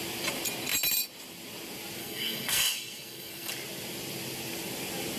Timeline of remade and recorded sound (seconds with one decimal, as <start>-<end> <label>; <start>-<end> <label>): 0.0-2.0 recorded; 2.0-3.5 remade; 3.5-5.2 recorded